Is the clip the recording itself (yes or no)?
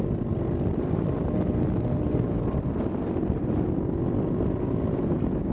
yes